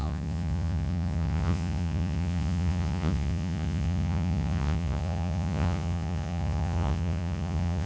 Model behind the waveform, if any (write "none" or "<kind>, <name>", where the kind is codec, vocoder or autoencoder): vocoder, Vocos